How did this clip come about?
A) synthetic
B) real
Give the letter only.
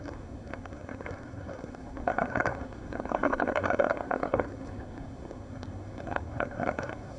A